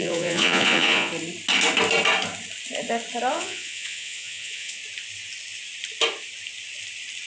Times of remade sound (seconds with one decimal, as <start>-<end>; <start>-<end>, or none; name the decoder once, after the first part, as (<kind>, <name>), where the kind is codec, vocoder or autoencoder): 0.0-1.1 (vocoder, Vocos); 3.3-4.8